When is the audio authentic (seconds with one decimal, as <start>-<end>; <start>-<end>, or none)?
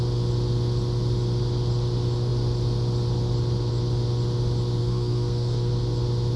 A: 0.0-4.8; 5.7-6.4